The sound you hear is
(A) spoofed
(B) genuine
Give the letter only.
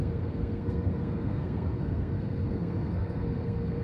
A